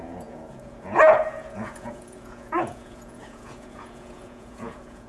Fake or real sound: fake